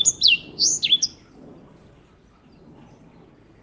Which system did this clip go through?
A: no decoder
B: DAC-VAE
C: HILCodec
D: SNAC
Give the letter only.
A